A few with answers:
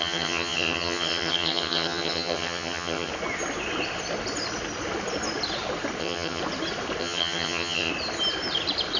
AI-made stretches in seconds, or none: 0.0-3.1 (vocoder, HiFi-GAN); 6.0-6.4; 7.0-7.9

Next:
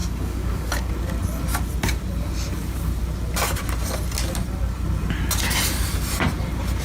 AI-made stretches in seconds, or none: 0.0-0.9 (codec, DAC)

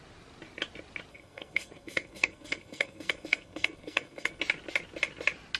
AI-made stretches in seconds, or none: 1.1-4.4 (codec, SNAC)

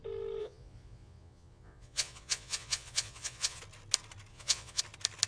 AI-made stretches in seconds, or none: 0.4-3.6 (vocoder, Vocos); 4.3-4.8

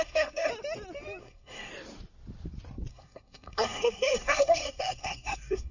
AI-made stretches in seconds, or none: 0.0-0.5 (codec, SNAC); 1.2-1.7; 2.9-5.7